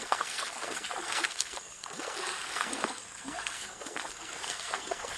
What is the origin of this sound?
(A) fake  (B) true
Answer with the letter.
A